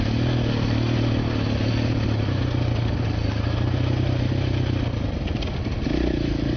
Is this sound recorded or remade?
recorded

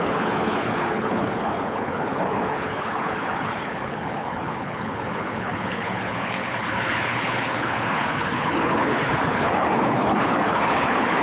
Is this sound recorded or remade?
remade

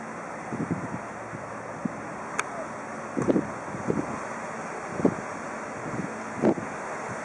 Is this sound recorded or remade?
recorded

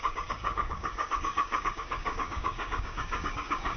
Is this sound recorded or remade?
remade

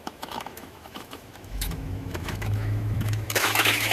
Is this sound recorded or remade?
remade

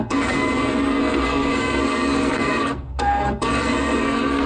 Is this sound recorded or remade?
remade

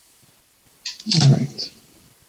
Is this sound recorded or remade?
remade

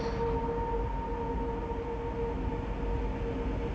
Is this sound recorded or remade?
recorded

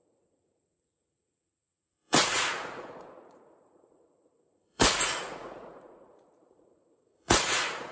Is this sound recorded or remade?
remade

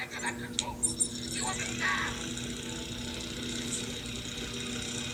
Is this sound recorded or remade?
recorded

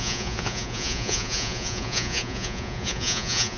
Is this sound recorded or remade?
remade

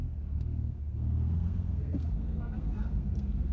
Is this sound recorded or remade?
remade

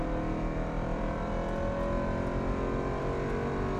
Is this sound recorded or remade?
recorded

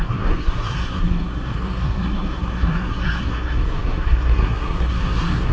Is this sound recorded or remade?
remade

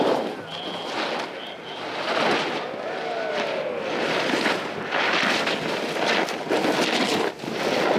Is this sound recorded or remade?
recorded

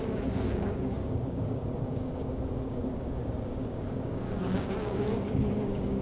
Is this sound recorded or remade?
remade